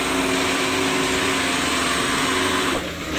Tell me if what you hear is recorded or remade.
recorded